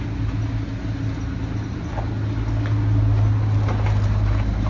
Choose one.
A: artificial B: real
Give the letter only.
B